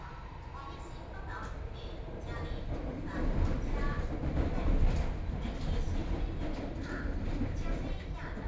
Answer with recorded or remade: recorded